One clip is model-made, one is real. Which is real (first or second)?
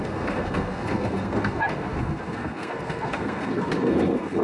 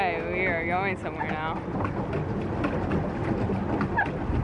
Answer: second